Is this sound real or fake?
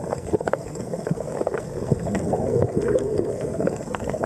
fake